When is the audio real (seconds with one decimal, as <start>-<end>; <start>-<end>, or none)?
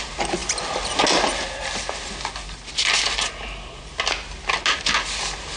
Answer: 0.0-5.6